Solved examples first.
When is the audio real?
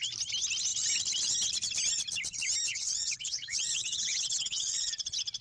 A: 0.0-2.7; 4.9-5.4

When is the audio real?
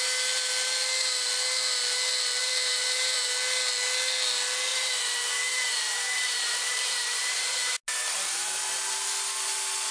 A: 0.0-2.4; 3.3-4.7; 7.8-9.9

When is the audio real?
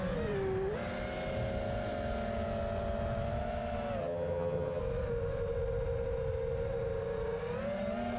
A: 0.0-4.0; 4.8-8.2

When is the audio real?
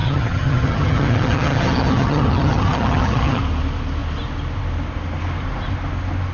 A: 3.4-6.3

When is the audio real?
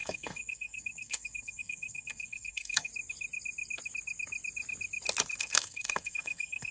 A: 2.9-5.4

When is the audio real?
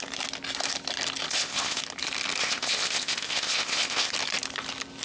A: 0.0-1.3; 1.8-2.4; 4.1-5.0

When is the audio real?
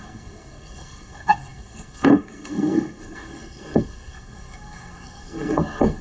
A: none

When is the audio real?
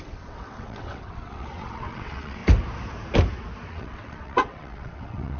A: 2.4-3.7